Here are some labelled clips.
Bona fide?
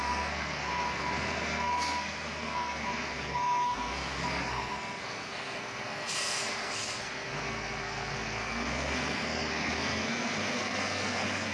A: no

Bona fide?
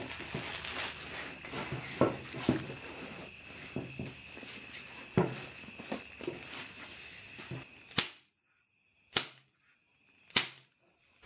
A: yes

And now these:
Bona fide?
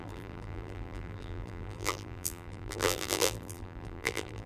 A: no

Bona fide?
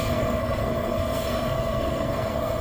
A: no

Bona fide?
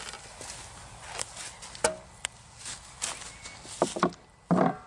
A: yes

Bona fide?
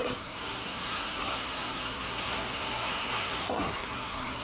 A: no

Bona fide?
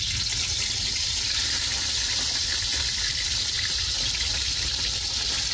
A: yes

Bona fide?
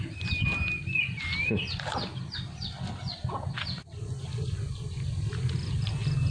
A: yes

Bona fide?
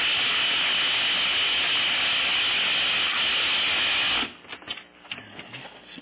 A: yes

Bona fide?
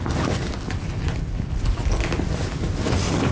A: yes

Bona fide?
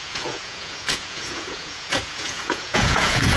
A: no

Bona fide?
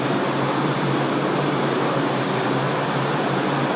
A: yes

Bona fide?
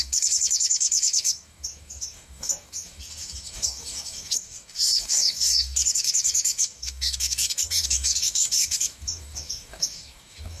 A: no